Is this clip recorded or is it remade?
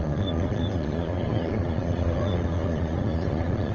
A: remade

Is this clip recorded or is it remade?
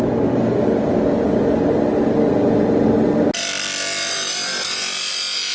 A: recorded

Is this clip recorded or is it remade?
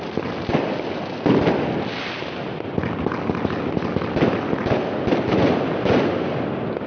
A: recorded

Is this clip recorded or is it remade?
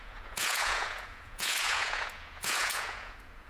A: remade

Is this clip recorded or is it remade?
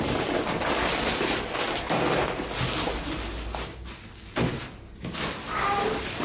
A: recorded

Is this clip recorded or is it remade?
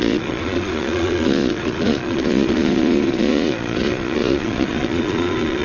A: remade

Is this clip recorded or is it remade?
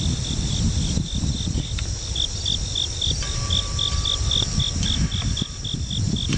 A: recorded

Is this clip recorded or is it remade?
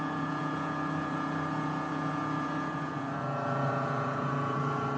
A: remade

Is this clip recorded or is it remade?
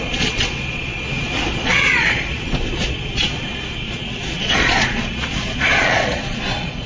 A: remade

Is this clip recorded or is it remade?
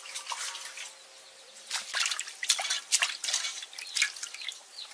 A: recorded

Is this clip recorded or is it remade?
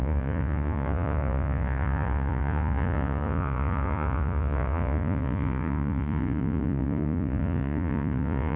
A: remade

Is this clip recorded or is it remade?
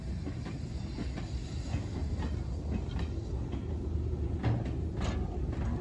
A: recorded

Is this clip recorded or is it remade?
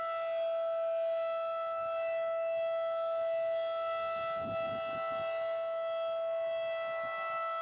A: recorded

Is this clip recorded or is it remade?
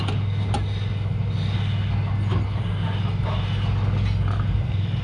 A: recorded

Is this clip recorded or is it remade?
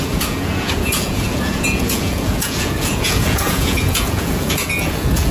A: remade